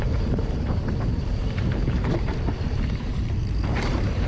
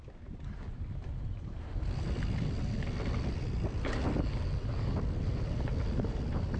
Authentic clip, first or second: second